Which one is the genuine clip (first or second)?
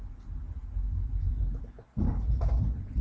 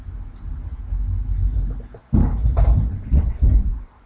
second